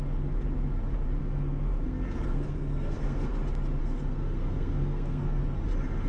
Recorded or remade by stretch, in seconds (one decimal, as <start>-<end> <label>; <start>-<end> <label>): 0.0-1.2 recorded; 1.2-3.3 remade; 3.3-3.8 recorded; 3.8-5.4 remade; 5.4-6.1 recorded